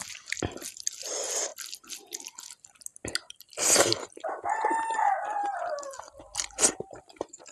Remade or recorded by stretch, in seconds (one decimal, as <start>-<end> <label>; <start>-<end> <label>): 0.0-7.5 recorded